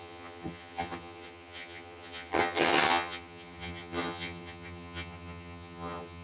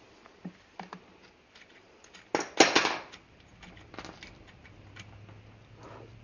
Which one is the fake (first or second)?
first